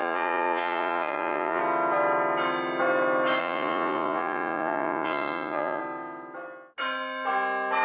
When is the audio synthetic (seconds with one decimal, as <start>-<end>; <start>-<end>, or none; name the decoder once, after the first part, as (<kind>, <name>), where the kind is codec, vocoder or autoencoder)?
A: 0.0-1.6 (vocoder, Vocos); 3.4-5.8

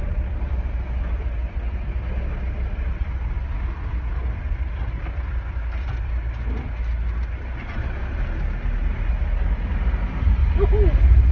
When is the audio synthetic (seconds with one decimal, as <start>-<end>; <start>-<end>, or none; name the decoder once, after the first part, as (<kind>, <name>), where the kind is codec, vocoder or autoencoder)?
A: 0.0-8.0 (vocoder, BigVGAN v2); 9.5-10.4

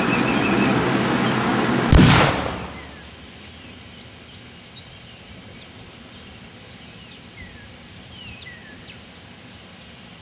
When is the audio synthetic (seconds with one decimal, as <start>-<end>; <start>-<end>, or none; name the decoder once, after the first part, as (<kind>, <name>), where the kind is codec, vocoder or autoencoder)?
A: none

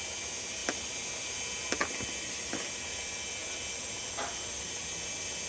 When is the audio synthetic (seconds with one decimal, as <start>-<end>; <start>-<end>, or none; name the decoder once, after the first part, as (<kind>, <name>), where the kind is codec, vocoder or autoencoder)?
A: none

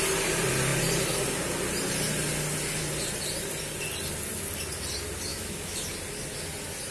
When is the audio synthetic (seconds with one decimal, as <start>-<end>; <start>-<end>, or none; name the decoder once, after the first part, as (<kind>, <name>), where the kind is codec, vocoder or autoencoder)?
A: 5.3-5.8 (autoencoder, DAC-VAE)